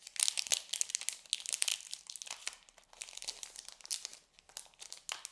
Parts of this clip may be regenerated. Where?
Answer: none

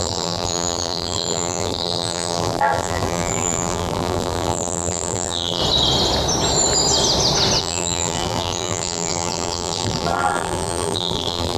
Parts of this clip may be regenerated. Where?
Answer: 0.0-5.6 (vocoder, BigVGAN v2); 7.6-11.6

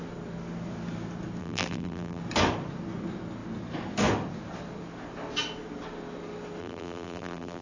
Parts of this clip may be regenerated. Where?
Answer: 1.4-2.2 (vocoder, BigVGAN v2); 6.6-7.6

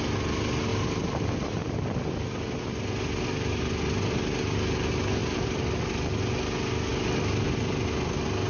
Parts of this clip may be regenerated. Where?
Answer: 0.7-1.7 (vocoder, BigVGAN v2); 5.2-5.8

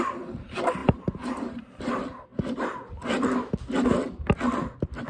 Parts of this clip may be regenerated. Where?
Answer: 0.8-1.8 (vocoder, BigVGAN v2)

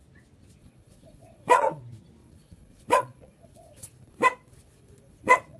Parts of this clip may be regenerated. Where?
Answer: 0.6-1.8 (vocoder, Vocos); 2.2-5.6

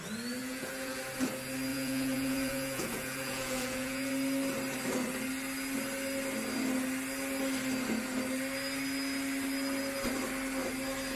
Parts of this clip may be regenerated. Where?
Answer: 0.4-1.0 (vocoder, Vocos); 1.7-4.1

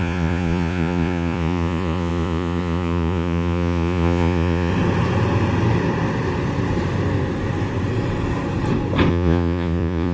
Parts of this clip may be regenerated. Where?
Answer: 0.0-4.7 (vocoder, Vocos); 9.1-10.1